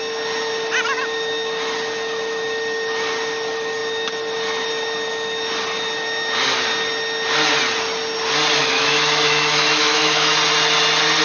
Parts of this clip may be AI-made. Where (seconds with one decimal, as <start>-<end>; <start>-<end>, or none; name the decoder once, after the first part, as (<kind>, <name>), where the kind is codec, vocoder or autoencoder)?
8.6-10.3 (autoencoder, DAC-VAE)